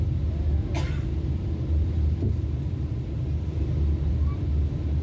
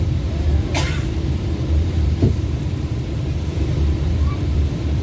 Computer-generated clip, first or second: second